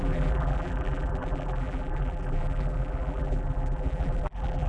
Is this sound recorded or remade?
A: remade